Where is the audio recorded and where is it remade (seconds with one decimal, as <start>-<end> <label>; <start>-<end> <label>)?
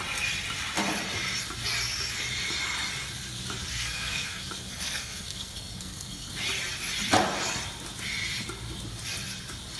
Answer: 0.0-3.7 recorded; 3.7-6.3 remade; 6.3-9.8 recorded